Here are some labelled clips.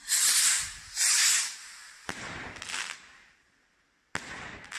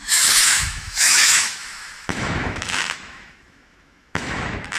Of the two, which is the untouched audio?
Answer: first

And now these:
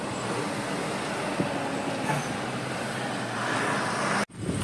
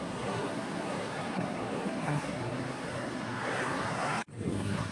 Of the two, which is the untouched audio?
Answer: first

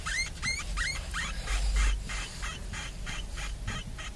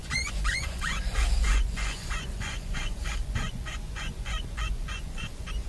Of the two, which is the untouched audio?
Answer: first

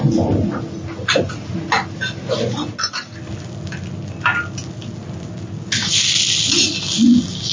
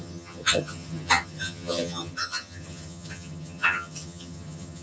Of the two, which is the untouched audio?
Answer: first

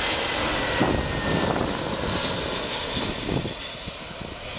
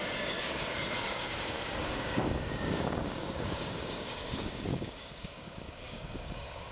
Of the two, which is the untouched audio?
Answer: first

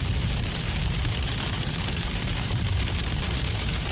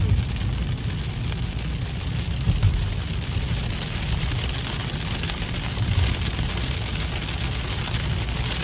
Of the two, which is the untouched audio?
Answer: second